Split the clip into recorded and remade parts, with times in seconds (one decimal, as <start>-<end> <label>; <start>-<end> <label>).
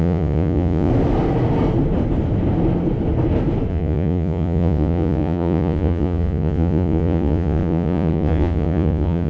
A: 0.0-0.9 remade; 0.9-3.7 recorded; 3.7-9.3 remade